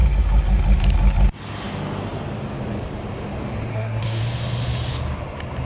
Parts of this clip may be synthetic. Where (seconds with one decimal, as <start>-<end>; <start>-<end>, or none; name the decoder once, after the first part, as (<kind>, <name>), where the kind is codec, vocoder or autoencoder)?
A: 3.7-4.2 (codec, SNAC)